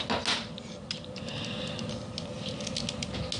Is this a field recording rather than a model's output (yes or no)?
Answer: yes